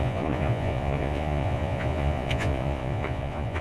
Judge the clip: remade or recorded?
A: remade